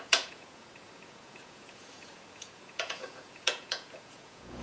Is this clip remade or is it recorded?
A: remade